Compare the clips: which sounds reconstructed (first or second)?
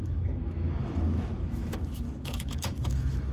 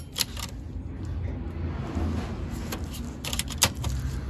first